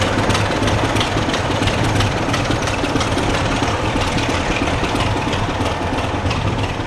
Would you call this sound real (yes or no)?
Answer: no